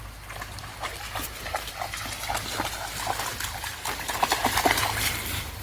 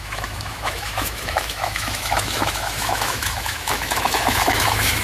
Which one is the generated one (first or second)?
second